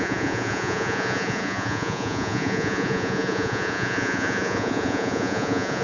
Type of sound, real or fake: fake